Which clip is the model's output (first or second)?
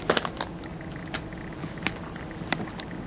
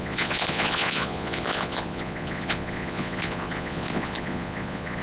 second